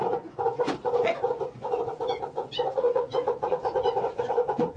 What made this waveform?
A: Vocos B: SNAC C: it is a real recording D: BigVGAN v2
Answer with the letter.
A